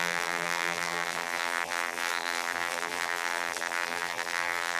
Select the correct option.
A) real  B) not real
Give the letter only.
B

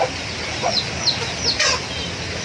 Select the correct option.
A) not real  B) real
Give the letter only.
B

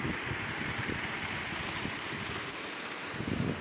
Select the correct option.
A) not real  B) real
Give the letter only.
B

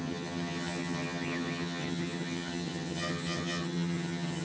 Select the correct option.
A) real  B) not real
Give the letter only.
B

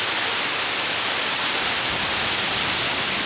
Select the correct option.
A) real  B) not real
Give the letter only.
A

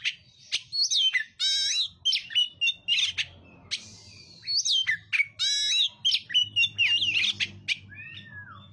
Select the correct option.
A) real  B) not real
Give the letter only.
A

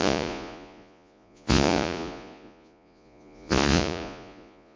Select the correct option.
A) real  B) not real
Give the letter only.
B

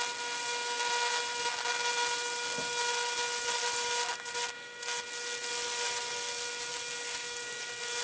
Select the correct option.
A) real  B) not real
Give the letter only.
A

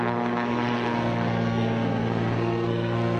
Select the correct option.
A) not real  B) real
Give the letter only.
A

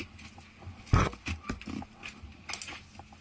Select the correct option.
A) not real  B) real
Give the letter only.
B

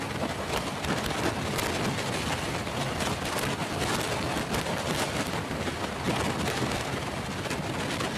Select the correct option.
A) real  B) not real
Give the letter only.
A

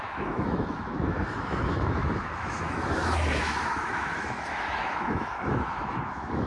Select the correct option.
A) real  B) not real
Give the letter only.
B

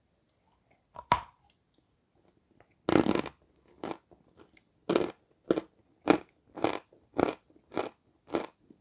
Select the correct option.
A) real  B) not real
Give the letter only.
A